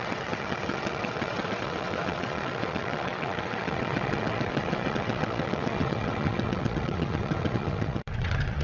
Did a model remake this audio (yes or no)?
yes